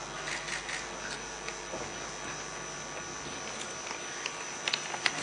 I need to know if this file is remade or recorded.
recorded